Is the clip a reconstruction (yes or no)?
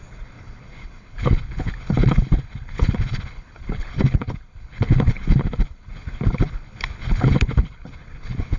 yes